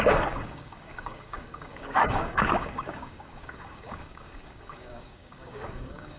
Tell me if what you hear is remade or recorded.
remade